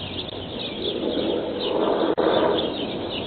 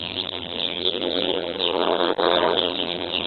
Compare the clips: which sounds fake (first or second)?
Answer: second